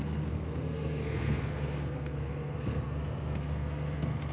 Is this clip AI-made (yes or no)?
yes